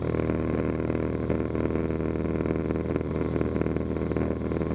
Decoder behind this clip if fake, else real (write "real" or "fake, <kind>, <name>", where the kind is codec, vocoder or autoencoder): real